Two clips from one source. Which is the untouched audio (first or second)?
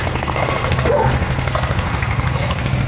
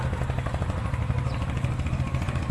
second